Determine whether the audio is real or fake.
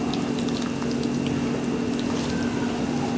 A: real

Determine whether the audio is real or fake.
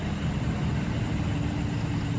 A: real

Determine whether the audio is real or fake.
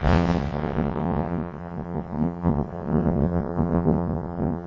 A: fake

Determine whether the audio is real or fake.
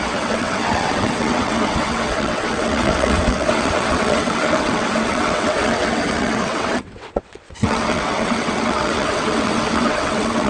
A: fake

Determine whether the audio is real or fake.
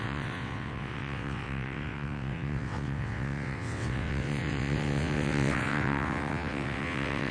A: fake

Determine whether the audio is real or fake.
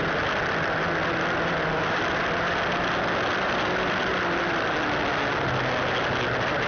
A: real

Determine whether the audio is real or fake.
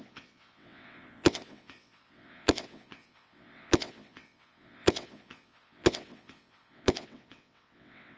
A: fake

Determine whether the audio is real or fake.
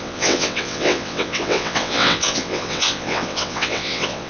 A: fake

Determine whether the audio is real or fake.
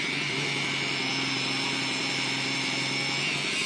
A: real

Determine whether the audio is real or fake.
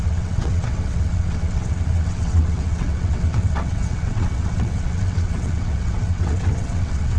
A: fake